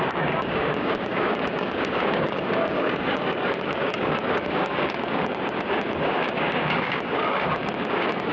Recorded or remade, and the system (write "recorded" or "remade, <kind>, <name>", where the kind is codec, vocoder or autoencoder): remade, codec, DAC